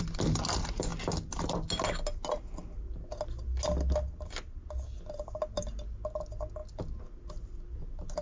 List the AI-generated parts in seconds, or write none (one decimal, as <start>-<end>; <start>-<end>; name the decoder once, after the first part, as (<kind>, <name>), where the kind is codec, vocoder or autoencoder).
none